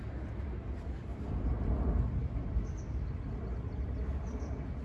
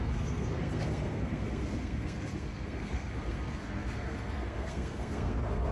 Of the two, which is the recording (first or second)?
first